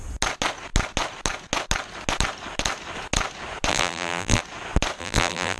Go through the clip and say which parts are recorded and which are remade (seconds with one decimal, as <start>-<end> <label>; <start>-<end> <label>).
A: 0.0-3.7 recorded; 3.7-4.4 remade; 4.4-5.0 recorded; 5.0-5.6 remade